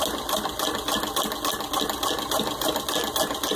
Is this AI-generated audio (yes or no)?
no